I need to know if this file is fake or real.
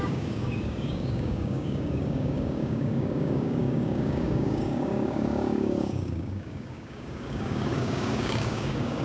fake